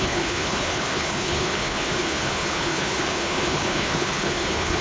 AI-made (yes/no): yes